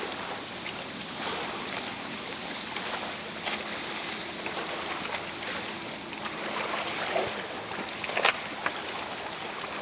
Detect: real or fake real